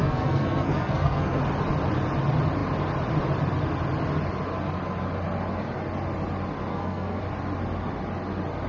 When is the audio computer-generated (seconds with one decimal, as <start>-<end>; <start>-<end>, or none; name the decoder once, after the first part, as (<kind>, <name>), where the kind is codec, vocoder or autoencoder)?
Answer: 0.0-1.4 (codec, SNAC); 6.7-7.2